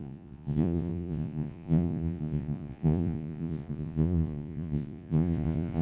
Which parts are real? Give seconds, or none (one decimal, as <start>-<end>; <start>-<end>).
none